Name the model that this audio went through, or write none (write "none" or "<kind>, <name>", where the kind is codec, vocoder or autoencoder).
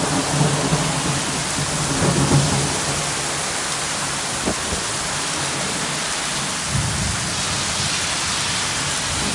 none